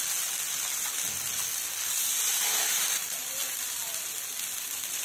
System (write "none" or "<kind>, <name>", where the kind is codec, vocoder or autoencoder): none